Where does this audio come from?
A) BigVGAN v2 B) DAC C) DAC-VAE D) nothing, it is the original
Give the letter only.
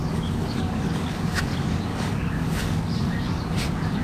B